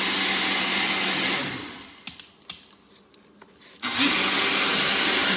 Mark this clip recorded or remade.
recorded